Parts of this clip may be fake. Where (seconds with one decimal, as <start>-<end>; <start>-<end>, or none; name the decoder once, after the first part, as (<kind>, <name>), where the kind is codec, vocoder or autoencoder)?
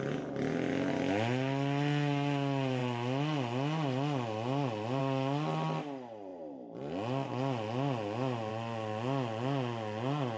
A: none